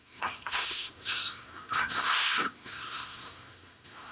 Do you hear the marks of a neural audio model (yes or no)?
yes